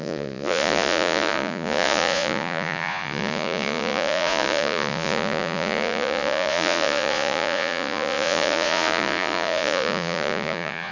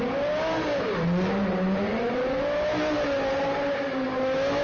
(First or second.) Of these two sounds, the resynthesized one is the first